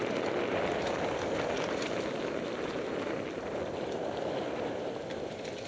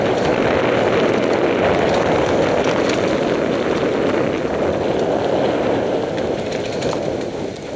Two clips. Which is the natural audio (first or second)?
second